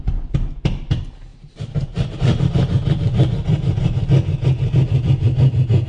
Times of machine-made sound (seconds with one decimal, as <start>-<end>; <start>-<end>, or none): none